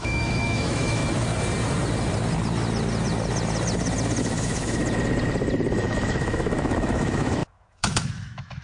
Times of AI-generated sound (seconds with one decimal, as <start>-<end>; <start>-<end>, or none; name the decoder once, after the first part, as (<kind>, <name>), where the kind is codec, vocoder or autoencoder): 0.0-1.0 (autoencoder, DAC-VAE); 4.2-4.8; 5.7-8.6